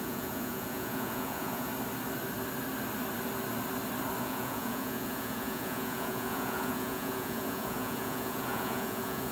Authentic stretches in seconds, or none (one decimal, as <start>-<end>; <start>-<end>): 1.7-4.2